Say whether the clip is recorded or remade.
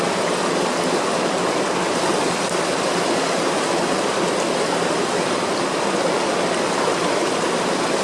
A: recorded